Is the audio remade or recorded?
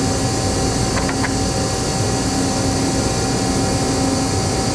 recorded